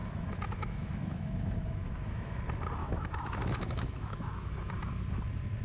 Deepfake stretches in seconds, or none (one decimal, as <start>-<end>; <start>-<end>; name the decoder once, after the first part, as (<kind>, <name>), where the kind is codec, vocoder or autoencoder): 0.0-2.4 (autoencoder, DAC-VAE); 2.8-4.7